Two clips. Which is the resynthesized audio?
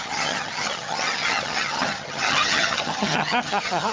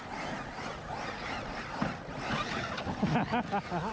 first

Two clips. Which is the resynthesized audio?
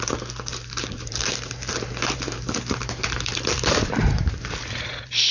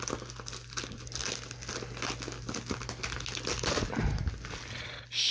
first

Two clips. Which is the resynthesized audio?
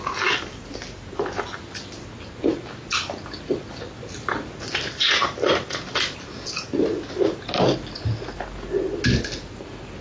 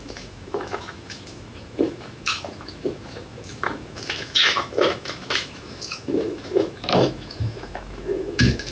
second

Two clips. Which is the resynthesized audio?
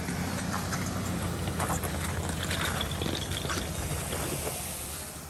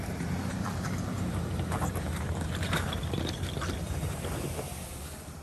second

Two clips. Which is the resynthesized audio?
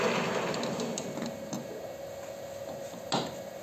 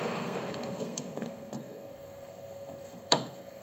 second